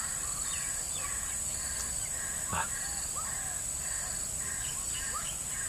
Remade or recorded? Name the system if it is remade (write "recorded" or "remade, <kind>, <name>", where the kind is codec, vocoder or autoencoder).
recorded